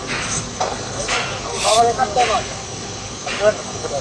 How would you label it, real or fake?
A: fake